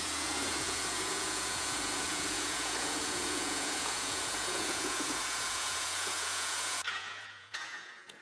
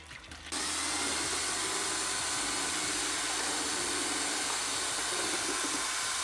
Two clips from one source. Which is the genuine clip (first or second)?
second